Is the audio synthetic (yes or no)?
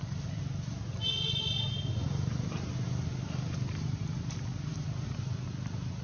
no